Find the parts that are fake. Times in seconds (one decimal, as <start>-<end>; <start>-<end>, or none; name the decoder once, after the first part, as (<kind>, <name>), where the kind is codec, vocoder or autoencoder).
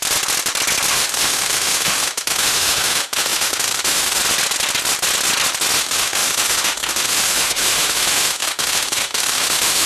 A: 0.9-4.2 (autoencoder, DAC-VAE); 5.8-9.9